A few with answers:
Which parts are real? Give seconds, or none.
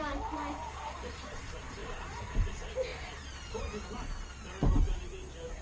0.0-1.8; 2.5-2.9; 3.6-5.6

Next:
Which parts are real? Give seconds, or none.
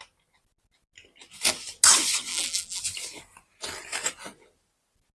0.0-2.3; 2.8-5.2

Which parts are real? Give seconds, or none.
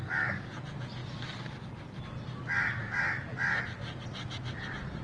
0.0-5.0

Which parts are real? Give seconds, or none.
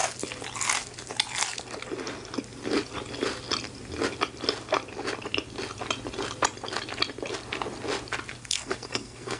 0.0-8.4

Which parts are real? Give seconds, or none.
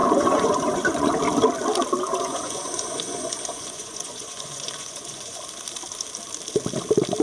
1.1-2.1; 5.4-7.2